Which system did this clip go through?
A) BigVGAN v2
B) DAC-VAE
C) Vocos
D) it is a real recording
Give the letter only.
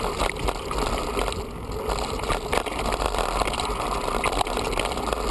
D